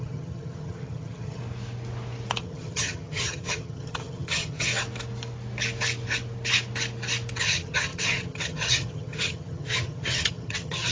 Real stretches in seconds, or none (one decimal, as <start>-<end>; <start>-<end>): 1.4-2.4; 4.7-7.4